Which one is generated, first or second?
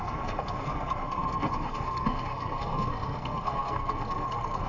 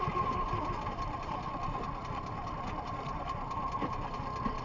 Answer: first